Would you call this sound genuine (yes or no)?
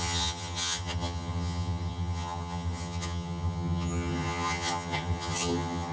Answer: no